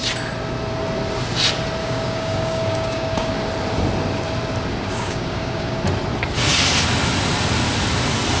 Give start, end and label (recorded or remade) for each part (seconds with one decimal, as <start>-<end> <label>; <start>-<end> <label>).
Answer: 0.0-1.8 recorded; 1.8-3.3 remade; 3.3-4.9 recorded; 4.9-5.8 remade; 5.8-8.4 recorded